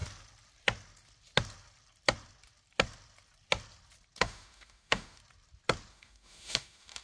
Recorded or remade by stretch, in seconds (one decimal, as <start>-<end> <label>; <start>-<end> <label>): 0.0-4.2 recorded; 4.2-5.2 remade; 5.2-5.9 recorded; 5.9-7.0 remade